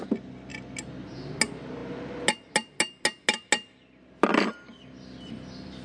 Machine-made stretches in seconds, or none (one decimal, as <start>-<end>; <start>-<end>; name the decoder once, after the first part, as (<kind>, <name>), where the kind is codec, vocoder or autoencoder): none